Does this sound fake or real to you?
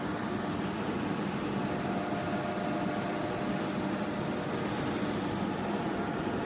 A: real